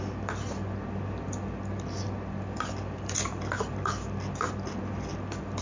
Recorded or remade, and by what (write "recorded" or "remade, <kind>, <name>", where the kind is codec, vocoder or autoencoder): remade, vocoder, BigVGAN v2